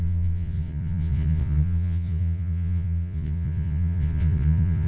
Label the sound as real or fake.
fake